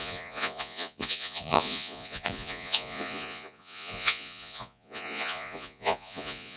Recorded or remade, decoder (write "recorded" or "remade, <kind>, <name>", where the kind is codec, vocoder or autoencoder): remade, vocoder, Vocos